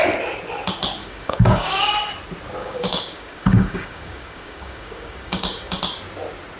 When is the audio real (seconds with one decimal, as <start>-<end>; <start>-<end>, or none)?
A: 0.0-1.0; 1.8-2.6; 5.8-6.6